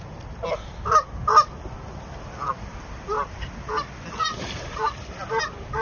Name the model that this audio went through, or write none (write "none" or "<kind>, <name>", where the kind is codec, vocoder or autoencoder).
none